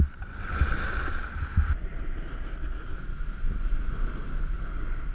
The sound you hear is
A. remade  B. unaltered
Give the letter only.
B